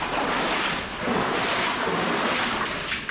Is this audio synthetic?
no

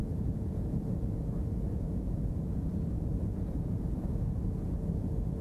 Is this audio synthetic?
yes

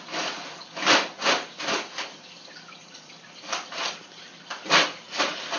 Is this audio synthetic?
yes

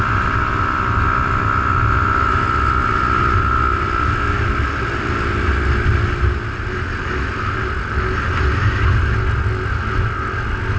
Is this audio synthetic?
no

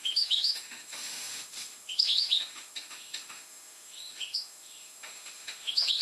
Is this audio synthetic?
yes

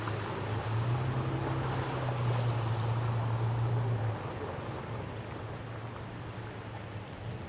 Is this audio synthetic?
no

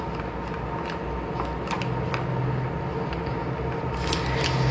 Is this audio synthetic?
no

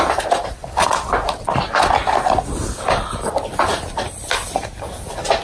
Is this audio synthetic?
no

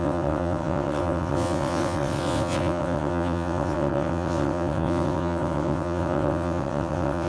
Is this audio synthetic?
yes